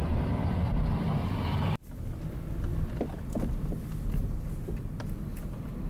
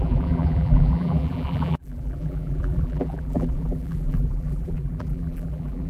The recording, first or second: first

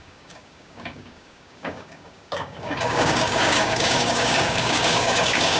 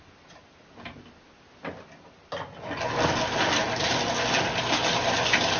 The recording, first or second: second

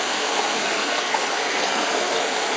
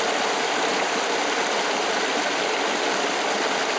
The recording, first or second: second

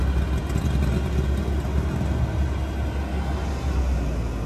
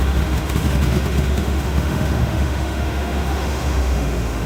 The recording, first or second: first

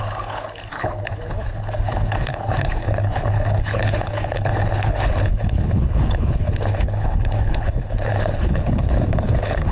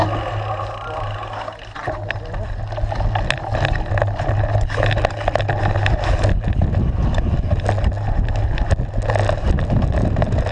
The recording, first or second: second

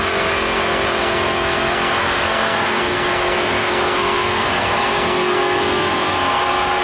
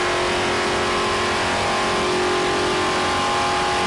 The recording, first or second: second